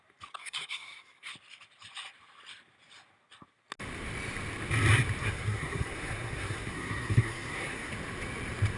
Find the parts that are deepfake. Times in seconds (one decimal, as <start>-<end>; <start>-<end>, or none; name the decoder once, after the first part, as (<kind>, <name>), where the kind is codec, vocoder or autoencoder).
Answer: 0.4-1.3 (codec, SNAC); 5.2-7.9